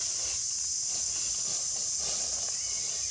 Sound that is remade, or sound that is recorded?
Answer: recorded